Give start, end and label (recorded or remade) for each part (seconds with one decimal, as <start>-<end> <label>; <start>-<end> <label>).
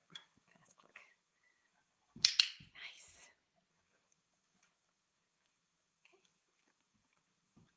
0.0-2.3 remade; 2.3-3.7 recorded; 3.7-7.8 remade